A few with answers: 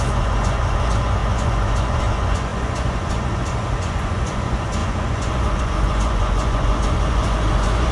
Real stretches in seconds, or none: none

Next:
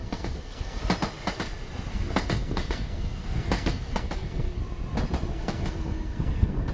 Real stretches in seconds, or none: 0.8-1.9; 4.6-5.3

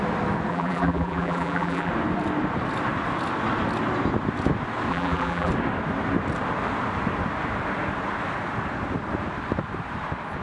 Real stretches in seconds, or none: 0.0-0.5; 1.9-4.9; 5.5-10.4

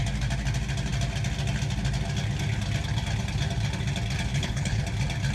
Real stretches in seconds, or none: 0.0-4.3; 4.8-5.3

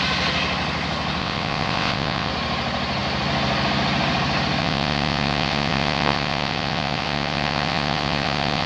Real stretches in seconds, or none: 0.0-1.2; 2.3-4.6

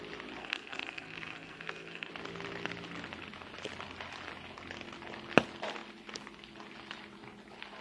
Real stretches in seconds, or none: 0.0-0.4; 2.1-7.8